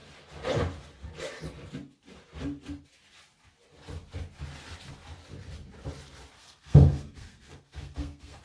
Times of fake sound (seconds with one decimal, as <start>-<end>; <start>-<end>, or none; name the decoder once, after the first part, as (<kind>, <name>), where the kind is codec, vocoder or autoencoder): 6.4-8.4 (codec, SNAC)